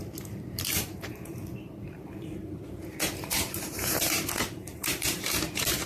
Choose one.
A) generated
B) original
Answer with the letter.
A